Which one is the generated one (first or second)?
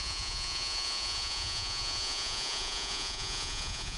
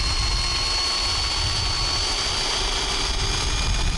first